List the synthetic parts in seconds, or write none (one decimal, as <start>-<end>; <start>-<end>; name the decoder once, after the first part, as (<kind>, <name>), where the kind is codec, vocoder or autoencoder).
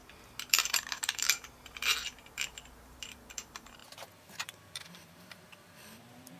0.5-6.4 (vocoder, BigVGAN v2)